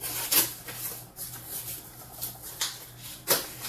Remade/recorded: recorded